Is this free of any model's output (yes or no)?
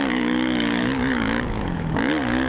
no